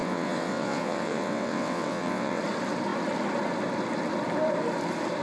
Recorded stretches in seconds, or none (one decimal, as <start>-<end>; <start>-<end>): 2.4-5.2